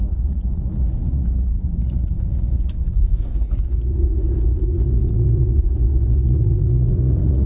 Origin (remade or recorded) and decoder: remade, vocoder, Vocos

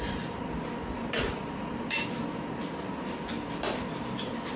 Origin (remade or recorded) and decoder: recorded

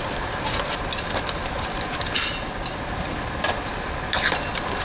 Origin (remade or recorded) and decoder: recorded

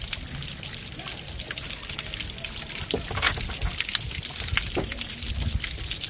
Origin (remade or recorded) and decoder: recorded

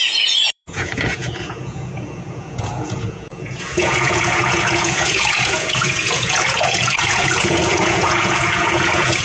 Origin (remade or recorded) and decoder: remade, vocoder, Vocos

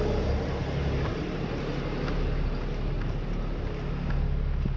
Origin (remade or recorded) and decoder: recorded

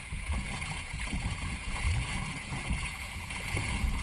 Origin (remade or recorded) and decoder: remade, vocoder, Vocos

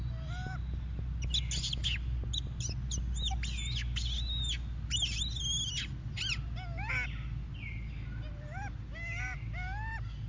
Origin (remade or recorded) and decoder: recorded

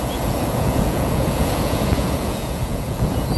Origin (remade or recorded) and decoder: remade, vocoder, Vocos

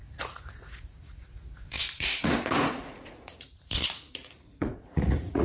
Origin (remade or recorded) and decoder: remade, vocoder, Vocos